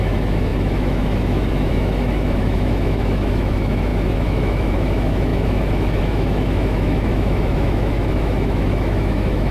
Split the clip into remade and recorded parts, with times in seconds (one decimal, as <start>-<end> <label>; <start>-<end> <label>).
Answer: 0.0-9.5 remade